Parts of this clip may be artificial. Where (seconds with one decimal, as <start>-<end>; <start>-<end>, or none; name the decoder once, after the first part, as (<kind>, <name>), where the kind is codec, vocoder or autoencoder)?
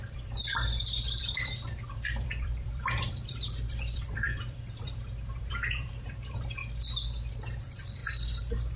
0.0-6.6 (vocoder, BigVGAN v2); 7.6-8.0